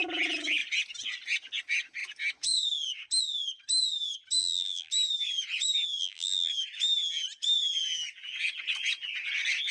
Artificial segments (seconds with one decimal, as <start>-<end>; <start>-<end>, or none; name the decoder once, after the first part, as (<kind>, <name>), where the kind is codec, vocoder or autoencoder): 4.4-4.9 (vocoder, BigVGAN v2); 6.0-6.5

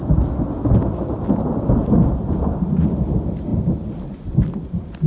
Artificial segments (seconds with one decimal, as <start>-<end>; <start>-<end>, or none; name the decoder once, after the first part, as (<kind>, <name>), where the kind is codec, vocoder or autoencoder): 1.8-2.5 (vocoder, BigVGAN v2); 3.5-5.1